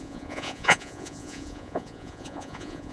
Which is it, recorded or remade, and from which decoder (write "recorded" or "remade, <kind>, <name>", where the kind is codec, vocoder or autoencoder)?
remade, vocoder, Vocos